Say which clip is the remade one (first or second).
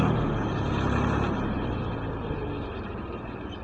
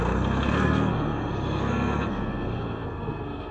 second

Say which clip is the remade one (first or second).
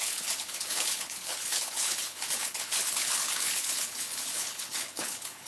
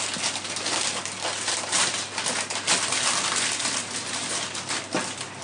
first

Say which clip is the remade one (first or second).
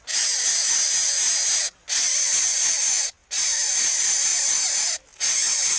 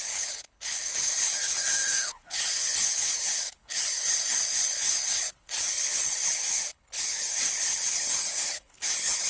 second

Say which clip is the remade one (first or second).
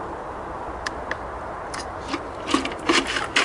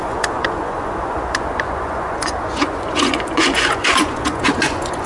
second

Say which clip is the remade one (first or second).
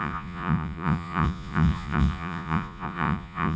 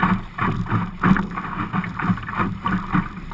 first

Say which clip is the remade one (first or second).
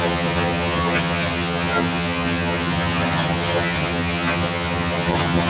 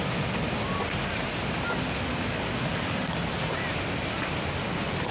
first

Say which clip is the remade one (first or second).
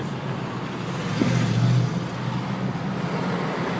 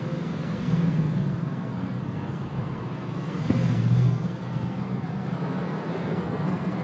second